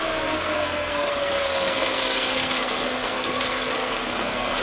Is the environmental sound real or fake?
fake